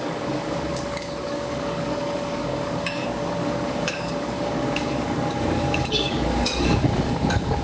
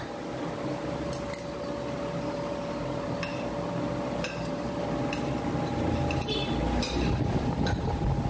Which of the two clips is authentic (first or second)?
second